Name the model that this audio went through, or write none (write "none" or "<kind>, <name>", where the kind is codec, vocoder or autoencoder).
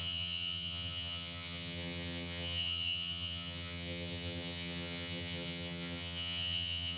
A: vocoder, HiFi-GAN